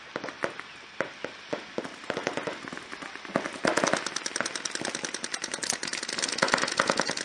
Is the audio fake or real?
real